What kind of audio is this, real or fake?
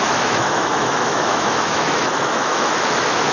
fake